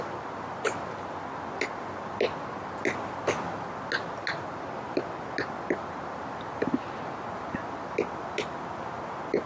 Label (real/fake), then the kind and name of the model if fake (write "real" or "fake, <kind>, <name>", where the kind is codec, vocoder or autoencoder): real